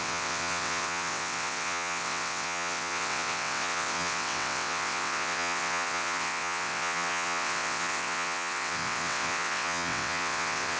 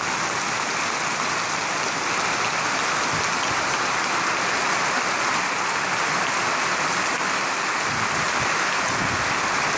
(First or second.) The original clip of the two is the second